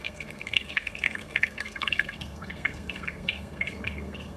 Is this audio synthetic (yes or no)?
yes